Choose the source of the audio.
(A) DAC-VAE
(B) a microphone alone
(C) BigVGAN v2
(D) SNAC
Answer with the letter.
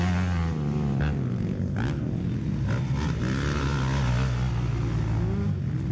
B